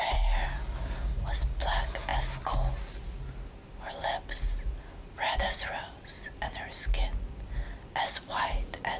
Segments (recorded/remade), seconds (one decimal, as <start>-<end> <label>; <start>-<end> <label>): 0.0-9.0 recorded